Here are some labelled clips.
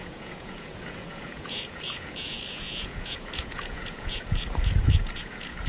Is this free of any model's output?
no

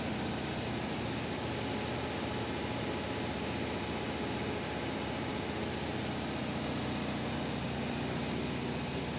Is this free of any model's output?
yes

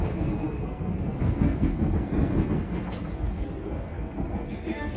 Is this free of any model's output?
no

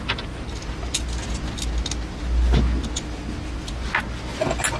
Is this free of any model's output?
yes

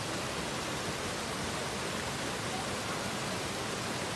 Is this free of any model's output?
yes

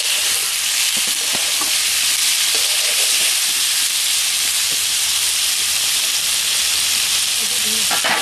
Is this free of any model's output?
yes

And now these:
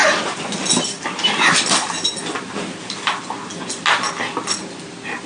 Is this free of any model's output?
yes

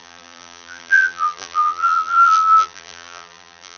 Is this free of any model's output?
no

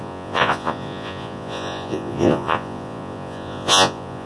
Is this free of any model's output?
no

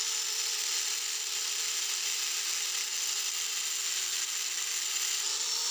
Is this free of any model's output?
yes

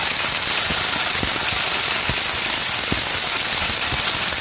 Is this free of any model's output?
yes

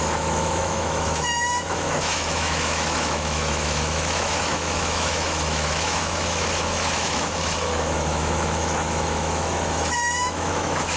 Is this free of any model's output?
no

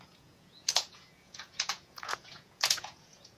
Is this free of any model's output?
no